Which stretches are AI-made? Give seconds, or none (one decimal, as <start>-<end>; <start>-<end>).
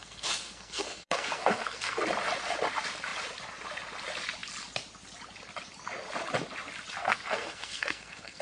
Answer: 0.0-2.0; 7.0-8.4